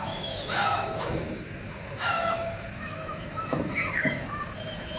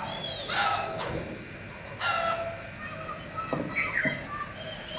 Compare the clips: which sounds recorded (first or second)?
second